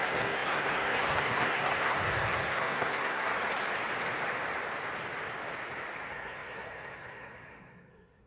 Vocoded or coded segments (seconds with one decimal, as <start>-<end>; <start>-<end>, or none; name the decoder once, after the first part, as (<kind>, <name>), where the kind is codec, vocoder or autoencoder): 0.0-3.3 (codec, SNAC); 6.1-8.3